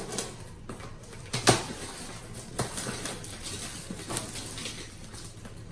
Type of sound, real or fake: real